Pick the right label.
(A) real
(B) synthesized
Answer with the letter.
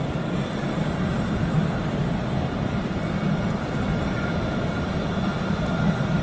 A